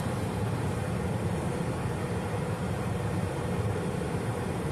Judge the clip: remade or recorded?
remade